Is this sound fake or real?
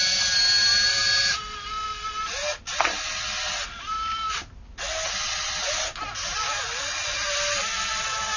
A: real